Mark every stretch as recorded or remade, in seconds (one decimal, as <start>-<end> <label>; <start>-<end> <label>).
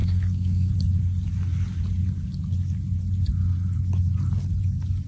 0.0-0.7 remade; 0.7-5.1 recorded